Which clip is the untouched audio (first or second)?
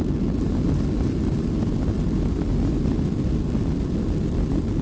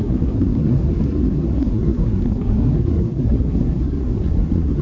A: first